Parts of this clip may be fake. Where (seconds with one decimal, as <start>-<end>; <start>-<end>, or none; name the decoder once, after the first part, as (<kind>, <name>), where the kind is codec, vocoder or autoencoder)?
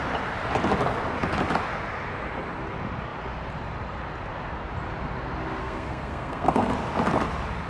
5.6-6.7 (codec, SNAC)